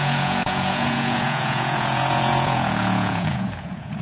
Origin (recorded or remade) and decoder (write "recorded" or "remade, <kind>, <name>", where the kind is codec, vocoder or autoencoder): remade, vocoder, Vocos